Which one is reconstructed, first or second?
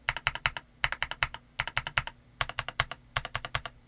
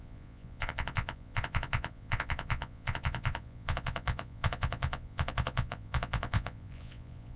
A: second